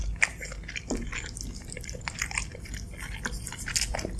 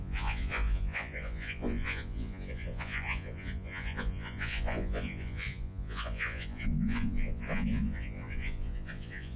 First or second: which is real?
first